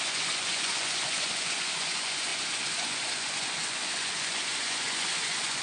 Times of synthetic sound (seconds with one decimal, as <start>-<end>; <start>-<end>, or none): 0.0-5.6